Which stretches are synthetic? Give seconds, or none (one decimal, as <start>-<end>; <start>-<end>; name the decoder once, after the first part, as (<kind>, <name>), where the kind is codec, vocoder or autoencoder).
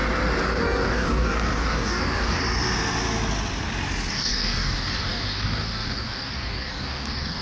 0.6-2.4 (codec, DAC); 4.1-7.4